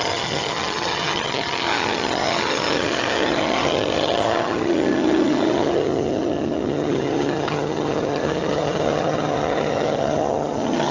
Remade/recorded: remade